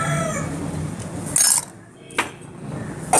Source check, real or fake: real